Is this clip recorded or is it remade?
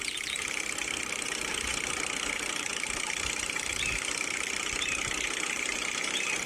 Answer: remade